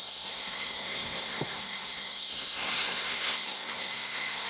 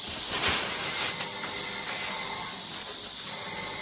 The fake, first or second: first